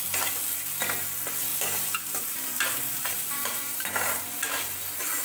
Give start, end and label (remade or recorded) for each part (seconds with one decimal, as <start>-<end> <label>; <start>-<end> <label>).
0.0-1.5 recorded; 1.5-4.4 remade; 4.4-5.2 recorded